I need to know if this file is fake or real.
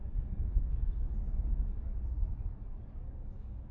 fake